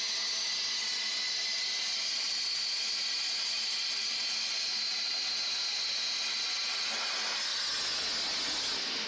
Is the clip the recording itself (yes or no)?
yes